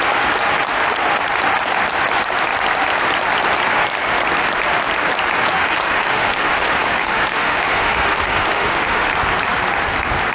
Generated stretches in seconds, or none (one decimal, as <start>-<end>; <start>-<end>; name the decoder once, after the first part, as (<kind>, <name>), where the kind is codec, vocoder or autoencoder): 5.4-9.1 (autoencoder, DAC-VAE)